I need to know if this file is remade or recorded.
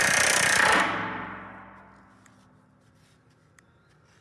recorded